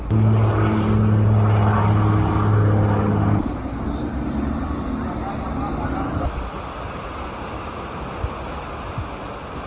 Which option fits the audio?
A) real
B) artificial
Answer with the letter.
A